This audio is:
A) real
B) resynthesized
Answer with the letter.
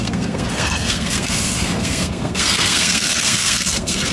B